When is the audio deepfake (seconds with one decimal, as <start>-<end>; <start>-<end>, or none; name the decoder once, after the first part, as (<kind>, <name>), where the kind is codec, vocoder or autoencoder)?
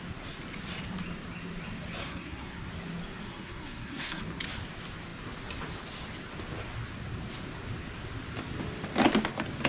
2.0-2.7 (codec, SNAC); 3.2-4.2